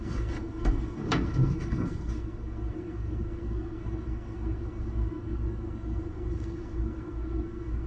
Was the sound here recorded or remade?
remade